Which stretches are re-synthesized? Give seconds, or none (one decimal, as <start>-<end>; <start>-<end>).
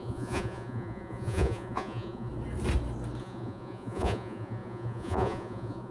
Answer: 0.0-2.3; 3.2-5.9